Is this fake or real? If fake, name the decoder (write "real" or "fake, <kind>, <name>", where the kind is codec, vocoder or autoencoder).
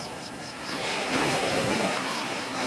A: fake, codec, SNAC